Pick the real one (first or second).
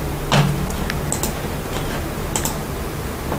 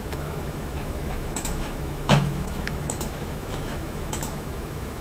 first